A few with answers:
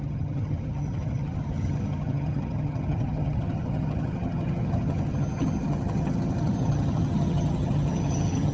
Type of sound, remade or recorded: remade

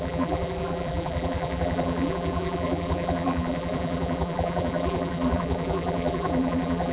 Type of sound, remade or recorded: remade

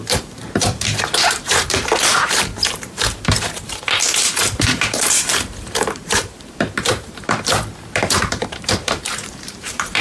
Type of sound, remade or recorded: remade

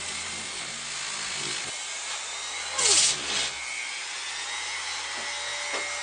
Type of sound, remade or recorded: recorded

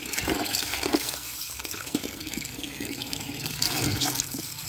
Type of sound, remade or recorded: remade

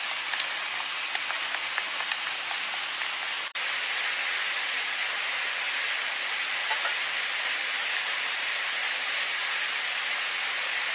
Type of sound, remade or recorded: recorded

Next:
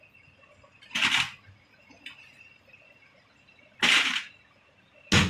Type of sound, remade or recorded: recorded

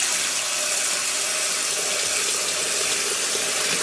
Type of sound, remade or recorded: recorded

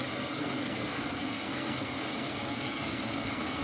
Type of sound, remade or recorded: remade